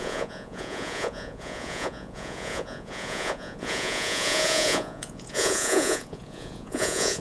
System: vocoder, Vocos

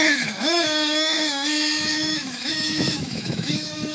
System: autoencoder, DAC-VAE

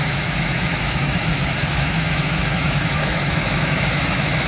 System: autoencoder, DAC-VAE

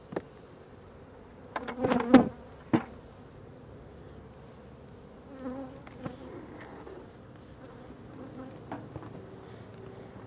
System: none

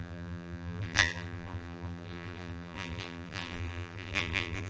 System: vocoder, BigVGAN v2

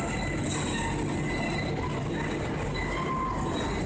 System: none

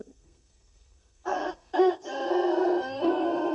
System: codec, SNAC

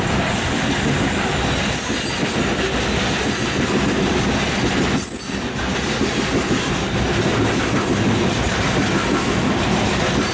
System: none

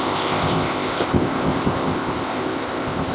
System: codec, ZipCodec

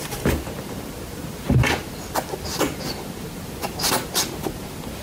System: vocoder, BigVGAN v2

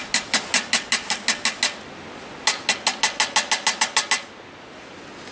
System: none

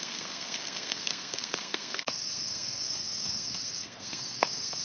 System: codec, SNAC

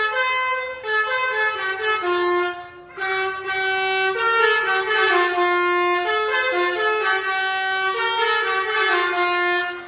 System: none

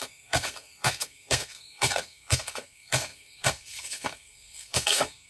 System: codec, SNAC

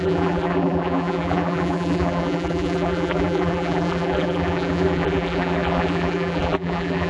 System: vocoder, BigVGAN v2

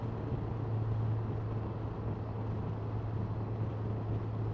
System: none